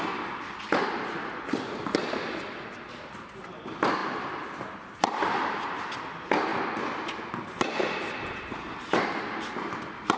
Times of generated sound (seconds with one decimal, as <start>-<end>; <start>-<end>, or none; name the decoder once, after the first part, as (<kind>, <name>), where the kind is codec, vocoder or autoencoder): none